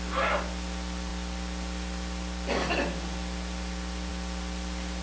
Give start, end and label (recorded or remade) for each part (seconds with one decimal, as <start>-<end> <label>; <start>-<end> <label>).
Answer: 0.0-5.0 recorded